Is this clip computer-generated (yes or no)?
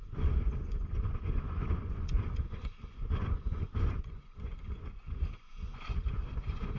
yes